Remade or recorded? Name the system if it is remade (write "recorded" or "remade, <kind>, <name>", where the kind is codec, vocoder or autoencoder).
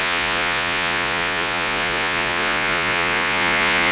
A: remade, vocoder, Vocos